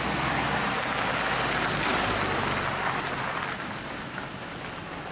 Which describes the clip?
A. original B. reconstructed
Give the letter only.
A